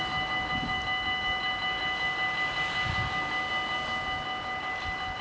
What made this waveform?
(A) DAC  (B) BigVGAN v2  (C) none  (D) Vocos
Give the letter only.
C